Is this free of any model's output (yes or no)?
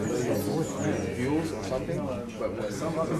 yes